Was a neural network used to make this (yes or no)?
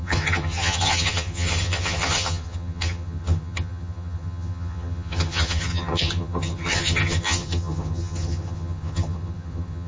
yes